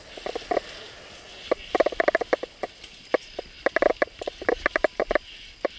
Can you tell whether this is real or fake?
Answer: real